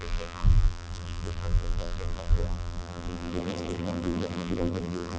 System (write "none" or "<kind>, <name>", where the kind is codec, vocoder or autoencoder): vocoder, BigVGAN v2